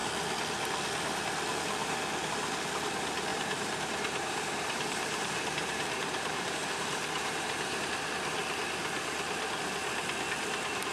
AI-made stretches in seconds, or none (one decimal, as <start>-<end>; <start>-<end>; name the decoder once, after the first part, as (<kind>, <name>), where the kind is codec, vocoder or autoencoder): 3.3-7.9 (vocoder, BigVGAN v2)